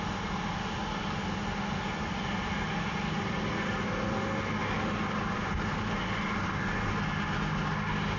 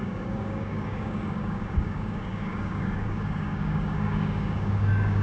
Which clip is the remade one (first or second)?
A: second